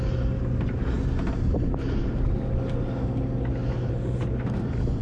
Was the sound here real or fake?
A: real